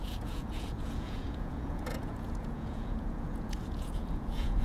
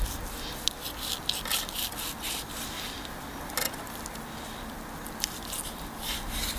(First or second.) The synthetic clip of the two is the first